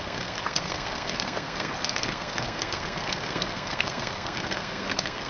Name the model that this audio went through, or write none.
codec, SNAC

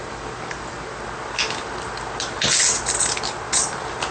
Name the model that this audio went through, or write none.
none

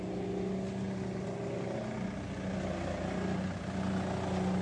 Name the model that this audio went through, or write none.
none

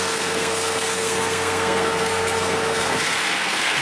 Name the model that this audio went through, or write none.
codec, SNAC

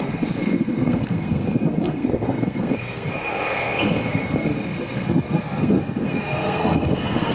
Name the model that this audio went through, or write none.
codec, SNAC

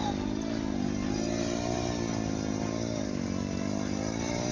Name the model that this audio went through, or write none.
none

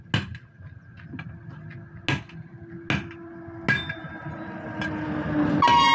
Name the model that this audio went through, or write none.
none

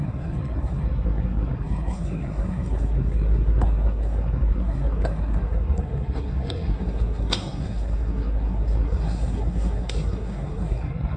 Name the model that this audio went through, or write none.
codec, SNAC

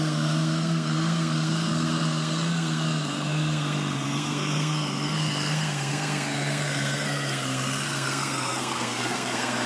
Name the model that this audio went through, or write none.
codec, SNAC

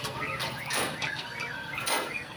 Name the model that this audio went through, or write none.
codec, SNAC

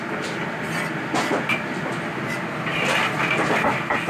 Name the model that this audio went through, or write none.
none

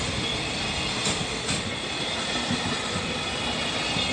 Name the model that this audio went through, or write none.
none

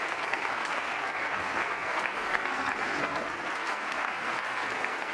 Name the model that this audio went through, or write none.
codec, SNAC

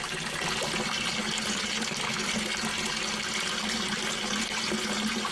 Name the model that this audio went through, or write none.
none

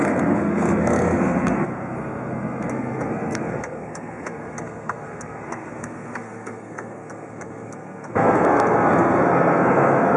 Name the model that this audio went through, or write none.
codec, SNAC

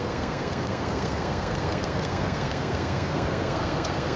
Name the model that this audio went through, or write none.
codec, SNAC